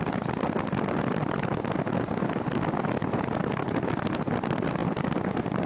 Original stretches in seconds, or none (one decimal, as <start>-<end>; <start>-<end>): 0.0-5.7